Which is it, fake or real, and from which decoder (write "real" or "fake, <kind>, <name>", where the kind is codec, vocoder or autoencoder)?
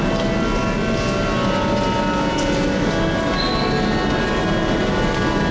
real